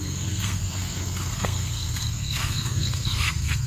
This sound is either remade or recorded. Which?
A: remade